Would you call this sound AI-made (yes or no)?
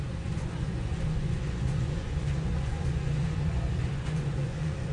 yes